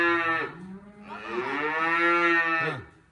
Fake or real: real